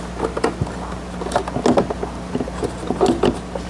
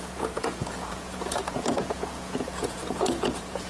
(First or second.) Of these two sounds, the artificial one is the second